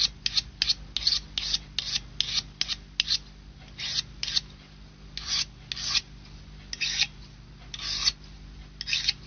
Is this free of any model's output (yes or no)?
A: yes